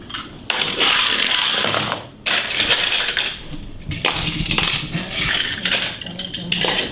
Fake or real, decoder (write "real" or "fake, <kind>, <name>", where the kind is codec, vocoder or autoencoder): fake, vocoder, BigVGAN v2